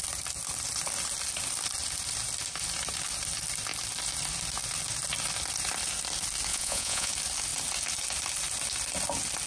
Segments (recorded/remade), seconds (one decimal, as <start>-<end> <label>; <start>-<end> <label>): 0.0-6.5 recorded; 6.5-7.1 remade; 7.1-9.5 recorded